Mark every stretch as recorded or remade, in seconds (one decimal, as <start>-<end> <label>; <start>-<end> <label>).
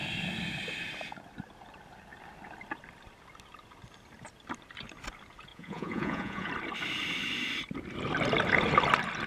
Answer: 0.0-5.5 recorded; 5.5-6.5 remade; 6.5-9.3 recorded